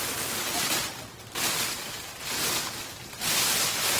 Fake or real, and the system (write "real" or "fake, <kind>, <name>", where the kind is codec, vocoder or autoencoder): real